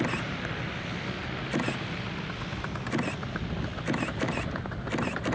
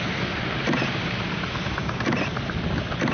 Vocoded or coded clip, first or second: second